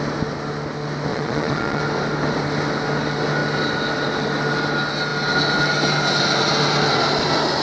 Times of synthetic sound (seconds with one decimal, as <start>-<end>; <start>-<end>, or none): 1.1-1.8